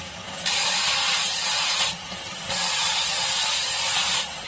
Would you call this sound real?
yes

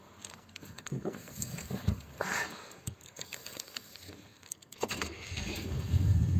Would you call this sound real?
no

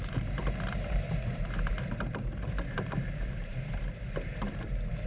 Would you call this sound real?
no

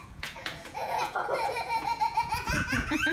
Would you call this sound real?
no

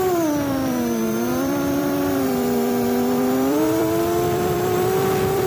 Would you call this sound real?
no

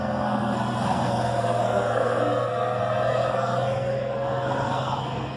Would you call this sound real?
no